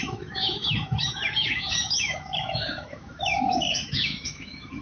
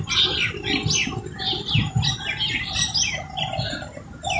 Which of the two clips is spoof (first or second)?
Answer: first